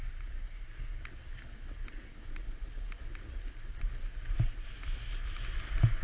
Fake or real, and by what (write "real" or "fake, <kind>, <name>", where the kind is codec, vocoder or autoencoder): real